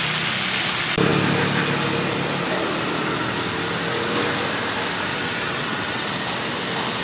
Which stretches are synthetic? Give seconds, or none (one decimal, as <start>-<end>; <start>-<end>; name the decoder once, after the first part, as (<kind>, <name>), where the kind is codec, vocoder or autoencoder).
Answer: 5.1-6.1 (vocoder, WaveNeXt)